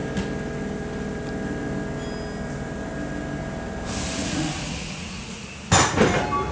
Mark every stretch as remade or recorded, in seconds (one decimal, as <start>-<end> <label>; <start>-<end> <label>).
0.0-4.2 recorded; 4.2-5.4 remade; 5.4-6.5 recorded